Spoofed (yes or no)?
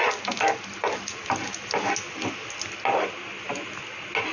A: no